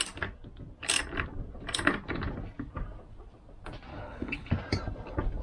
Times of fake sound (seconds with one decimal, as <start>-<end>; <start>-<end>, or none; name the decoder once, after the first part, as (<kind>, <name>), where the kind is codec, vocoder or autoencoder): 3.9-4.5 (codec, HILCodec)